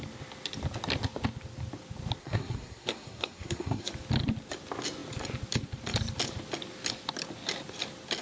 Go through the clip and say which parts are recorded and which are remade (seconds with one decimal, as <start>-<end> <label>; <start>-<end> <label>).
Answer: 0.0-2.2 recorded; 2.2-3.9 remade; 3.9-8.2 recorded